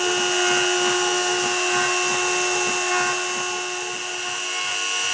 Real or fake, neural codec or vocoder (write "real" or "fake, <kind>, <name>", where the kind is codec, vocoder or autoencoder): real